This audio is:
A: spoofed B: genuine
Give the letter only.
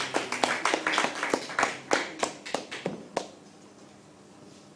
B